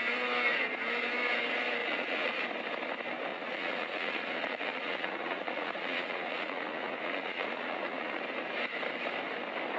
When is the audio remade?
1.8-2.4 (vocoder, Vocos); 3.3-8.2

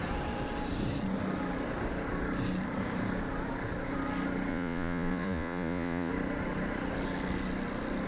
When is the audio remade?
4.5-6.1 (vocoder, Vocos)

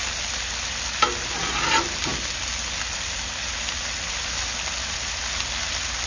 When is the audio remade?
none

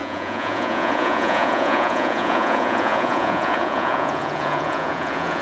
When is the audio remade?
0.0-5.4 (vocoder, Vocos)